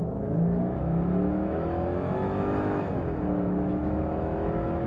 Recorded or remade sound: remade